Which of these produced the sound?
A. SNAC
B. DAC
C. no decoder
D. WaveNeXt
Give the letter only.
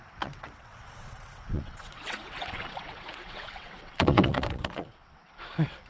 D